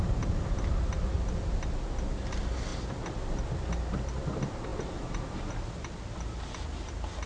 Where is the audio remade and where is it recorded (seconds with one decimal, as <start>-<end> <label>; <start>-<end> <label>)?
0.0-7.3 recorded